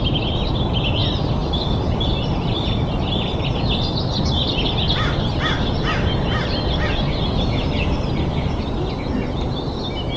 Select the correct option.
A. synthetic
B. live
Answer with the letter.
B